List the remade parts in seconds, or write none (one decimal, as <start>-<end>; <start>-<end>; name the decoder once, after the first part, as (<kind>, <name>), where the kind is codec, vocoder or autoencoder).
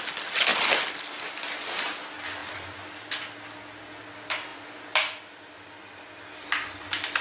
2.4-3.2 (vocoder, BigVGAN v2); 4.5-5.9